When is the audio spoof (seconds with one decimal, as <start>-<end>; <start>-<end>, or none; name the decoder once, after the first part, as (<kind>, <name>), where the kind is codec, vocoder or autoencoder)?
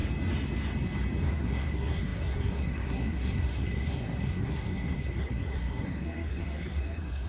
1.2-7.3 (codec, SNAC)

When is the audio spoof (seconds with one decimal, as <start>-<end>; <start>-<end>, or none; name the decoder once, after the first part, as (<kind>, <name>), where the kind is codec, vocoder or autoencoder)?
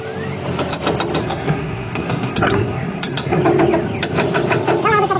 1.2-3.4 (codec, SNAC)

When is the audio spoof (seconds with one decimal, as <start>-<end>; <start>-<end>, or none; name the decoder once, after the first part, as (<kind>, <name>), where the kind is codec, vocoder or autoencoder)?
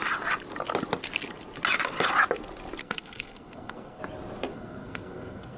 2.8-4.0 (codec, SNAC); 4.5-5.6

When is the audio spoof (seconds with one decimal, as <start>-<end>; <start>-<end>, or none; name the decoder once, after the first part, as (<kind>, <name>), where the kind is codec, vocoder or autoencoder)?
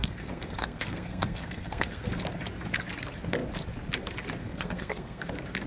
0.0-2.1 (codec, SNAC); 4.4-5.3